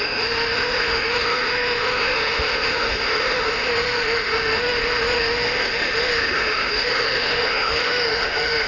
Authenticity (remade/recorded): remade